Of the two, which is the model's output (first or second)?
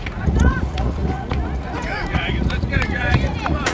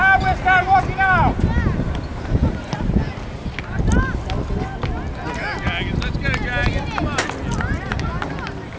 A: first